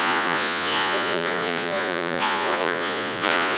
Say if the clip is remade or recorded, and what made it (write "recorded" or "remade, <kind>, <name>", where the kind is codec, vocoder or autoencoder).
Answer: remade, vocoder, Vocos